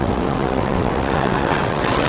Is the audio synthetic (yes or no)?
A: yes